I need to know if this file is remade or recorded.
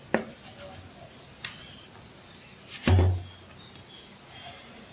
recorded